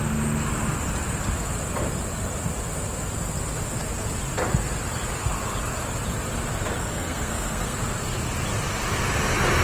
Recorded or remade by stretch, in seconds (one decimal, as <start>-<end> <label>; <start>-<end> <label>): 0.0-6.8 recorded; 6.8-7.8 remade; 7.8-9.6 recorded